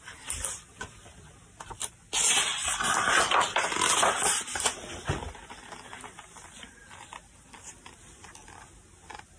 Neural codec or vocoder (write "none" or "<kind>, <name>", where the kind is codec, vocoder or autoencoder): none